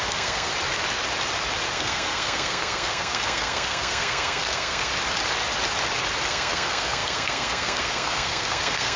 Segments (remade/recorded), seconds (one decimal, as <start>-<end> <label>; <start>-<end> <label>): 0.0-0.5 remade; 0.5-1.7 recorded; 1.7-4.9 remade; 4.9-6.3 recorded; 6.3-9.0 remade